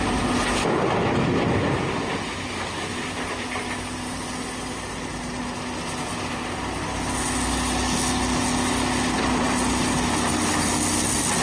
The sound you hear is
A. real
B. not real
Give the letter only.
A